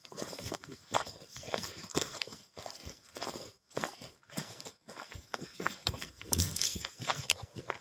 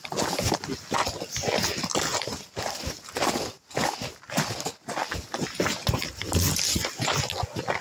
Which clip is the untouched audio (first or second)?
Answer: second